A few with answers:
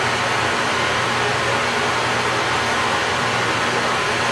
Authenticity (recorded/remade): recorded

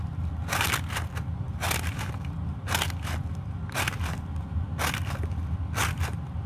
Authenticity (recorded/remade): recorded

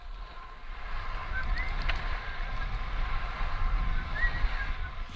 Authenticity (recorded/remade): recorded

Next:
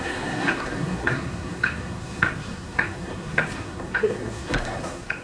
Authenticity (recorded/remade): remade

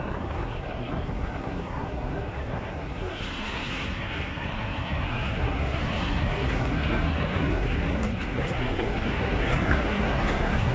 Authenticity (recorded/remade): remade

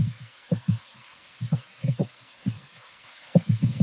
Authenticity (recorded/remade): remade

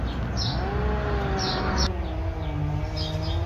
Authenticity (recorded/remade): recorded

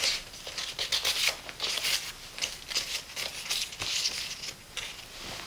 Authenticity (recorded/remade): recorded